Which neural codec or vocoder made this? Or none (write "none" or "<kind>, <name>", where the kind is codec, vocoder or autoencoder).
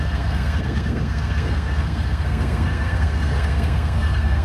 codec, SNAC